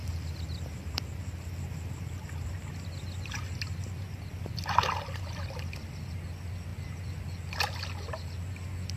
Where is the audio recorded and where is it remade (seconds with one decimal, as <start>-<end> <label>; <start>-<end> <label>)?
0.0-9.0 recorded